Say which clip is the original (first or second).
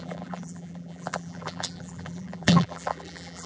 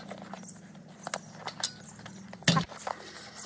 second